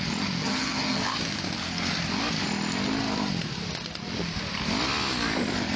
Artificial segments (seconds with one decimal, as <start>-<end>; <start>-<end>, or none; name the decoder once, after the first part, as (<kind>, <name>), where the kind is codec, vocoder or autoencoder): 0.4-1.0 (vocoder, HiFi-GAN)